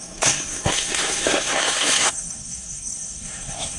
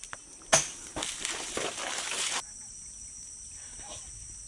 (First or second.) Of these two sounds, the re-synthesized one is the first